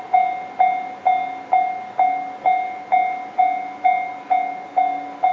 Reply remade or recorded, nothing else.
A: recorded